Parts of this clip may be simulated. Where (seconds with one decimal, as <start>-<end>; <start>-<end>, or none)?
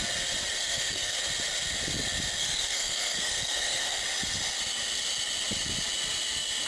0.6-1.2; 2.4-4.0